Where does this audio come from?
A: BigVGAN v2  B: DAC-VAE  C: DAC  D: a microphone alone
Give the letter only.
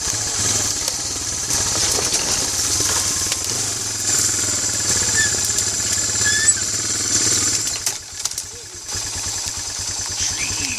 A